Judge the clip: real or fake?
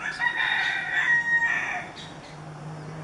real